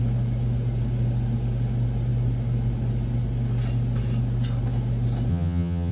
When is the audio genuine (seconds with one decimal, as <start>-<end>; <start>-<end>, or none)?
0.0-5.3